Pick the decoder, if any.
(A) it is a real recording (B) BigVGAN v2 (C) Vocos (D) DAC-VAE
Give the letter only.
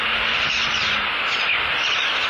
A